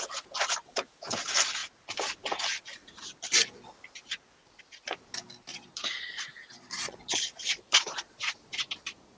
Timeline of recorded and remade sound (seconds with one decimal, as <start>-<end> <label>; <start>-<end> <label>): 0.0-5.5 recorded; 5.5-9.2 remade